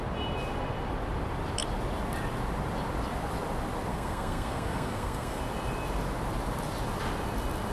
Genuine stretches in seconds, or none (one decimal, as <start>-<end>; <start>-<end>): 0.0-3.9; 5.4-7.7